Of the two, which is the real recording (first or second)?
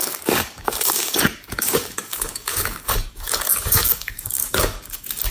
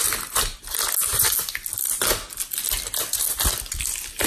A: second